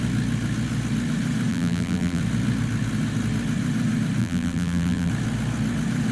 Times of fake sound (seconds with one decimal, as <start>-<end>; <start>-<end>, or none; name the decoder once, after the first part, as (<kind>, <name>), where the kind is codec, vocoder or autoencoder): 1.5-2.2 (vocoder, BigVGAN v2); 4.2-5.1